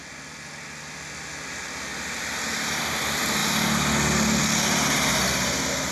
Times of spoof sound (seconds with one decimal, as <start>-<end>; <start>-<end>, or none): 1.9-2.8